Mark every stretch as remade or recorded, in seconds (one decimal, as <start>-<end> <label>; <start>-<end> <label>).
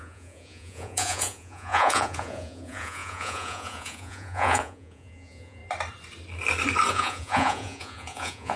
0.0-5.6 remade; 5.6-6.9 recorded; 6.9-8.6 remade